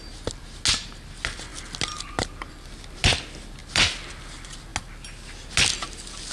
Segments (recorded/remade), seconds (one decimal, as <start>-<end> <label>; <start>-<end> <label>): 0.0-6.3 recorded

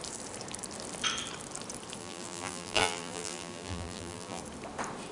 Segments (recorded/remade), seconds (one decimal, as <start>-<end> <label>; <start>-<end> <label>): 0.0-2.0 recorded; 2.0-4.4 remade; 4.4-5.1 recorded